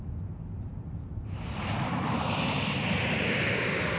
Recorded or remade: recorded